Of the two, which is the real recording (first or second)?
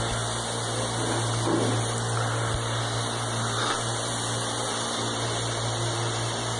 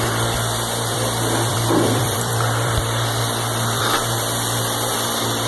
first